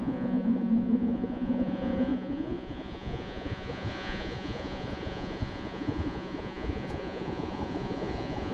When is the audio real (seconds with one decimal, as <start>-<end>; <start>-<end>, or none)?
none